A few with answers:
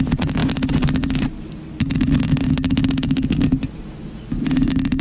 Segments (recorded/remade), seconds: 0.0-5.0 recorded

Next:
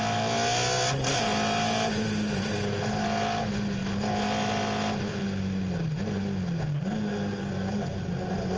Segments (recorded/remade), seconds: 0.0-8.6 recorded